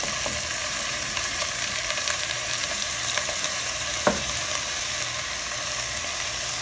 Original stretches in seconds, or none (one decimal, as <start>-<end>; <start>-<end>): 0.0-0.6; 4.6-6.6